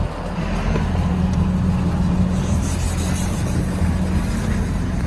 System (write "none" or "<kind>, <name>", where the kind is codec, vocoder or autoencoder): none